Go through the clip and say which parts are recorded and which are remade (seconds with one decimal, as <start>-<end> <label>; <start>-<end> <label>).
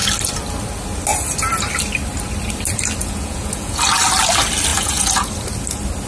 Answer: 0.0-3.0 recorded; 3.0-3.8 remade; 3.8-4.7 recorded; 4.7-5.3 remade; 5.3-6.1 recorded